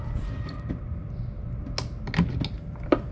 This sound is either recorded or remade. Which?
recorded